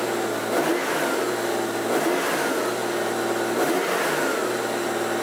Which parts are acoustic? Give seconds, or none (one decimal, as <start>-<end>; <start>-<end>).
0.0-5.2